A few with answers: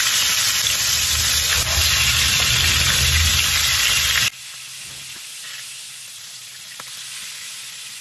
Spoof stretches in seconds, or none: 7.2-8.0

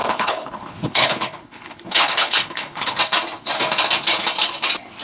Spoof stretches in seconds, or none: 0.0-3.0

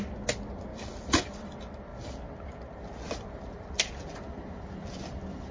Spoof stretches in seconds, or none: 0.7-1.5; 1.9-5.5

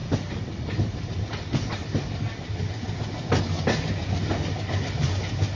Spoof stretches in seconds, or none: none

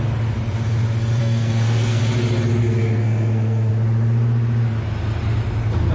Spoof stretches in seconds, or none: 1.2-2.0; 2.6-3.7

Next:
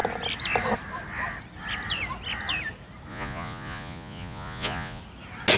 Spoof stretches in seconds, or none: 3.1-5.0

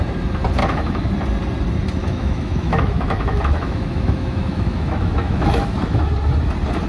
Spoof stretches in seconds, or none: 0.6-1.1; 2.0-6.1

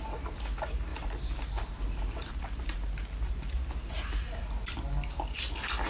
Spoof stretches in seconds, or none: 0.9-4.4